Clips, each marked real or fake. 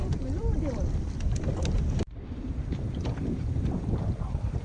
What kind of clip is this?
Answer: fake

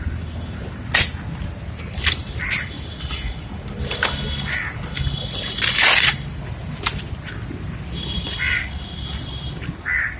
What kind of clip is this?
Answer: real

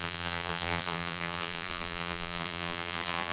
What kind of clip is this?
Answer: fake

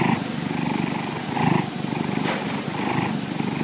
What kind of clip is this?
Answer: real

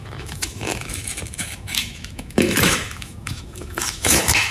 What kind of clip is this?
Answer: fake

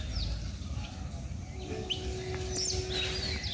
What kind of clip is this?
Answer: real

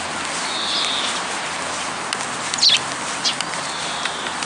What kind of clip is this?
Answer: real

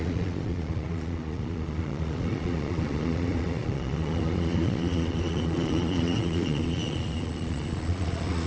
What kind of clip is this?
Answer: fake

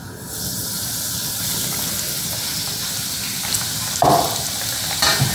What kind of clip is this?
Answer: real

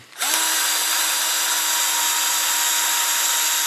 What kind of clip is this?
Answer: real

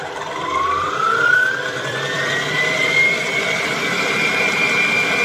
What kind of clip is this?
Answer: fake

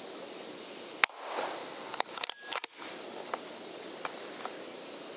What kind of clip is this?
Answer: real